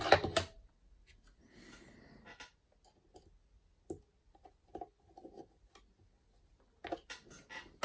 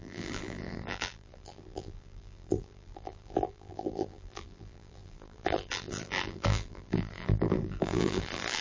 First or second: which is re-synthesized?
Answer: second